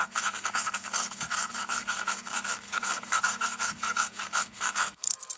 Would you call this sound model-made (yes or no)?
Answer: yes